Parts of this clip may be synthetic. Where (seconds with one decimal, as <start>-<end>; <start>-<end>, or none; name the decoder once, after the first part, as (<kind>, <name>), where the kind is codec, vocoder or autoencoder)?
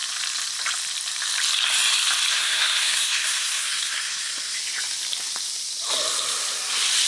2.3-4.6 (codec, SNAC)